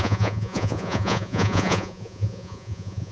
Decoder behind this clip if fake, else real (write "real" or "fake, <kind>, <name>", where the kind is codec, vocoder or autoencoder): fake, vocoder, Vocos